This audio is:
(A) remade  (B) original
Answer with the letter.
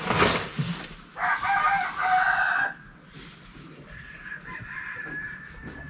B